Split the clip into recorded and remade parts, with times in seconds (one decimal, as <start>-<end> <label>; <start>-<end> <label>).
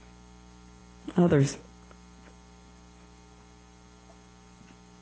0.0-5.0 recorded